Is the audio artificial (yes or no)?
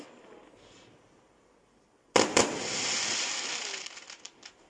no